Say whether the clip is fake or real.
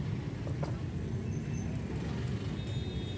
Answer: real